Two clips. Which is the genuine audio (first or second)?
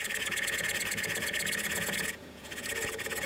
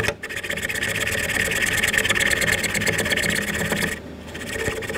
second